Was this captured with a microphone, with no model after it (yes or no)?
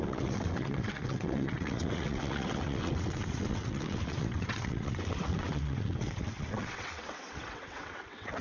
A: no